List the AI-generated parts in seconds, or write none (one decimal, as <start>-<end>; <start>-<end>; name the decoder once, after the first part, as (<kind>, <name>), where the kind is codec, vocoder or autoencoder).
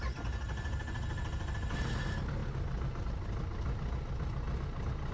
none